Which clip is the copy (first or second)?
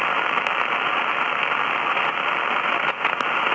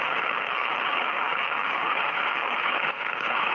second